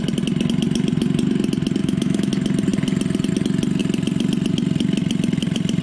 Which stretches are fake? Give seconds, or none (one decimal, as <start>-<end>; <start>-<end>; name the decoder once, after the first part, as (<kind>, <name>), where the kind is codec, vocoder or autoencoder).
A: 1.8-2.3 (autoencoder, DAC-VAE)

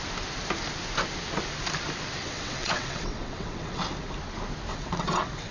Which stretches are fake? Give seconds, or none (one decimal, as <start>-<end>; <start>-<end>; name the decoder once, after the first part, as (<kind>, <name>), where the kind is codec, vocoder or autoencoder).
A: 2.2-3.8 (vocoder, WaveNeXt); 4.7-5.5

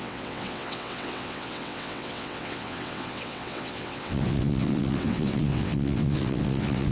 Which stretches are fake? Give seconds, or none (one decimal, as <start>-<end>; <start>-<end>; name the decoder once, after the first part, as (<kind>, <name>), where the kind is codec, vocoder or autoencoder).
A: 0.0-6.9 (vocoder, WaveNeXt)

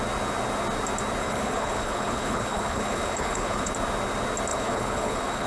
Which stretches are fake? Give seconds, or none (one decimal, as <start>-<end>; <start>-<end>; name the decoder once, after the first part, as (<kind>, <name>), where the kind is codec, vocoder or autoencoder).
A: 1.2-3.7 (codec, HILCodec); 4.5-5.5

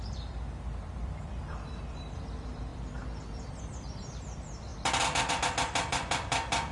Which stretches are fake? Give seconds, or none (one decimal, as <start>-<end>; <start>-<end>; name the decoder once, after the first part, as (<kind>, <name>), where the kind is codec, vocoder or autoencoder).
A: 0.0-4.7 (vocoder, BigVGAN v2); 5.3-6.7